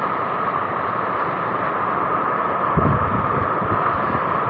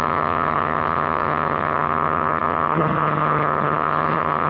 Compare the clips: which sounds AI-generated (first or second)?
second